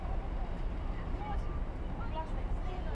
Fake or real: real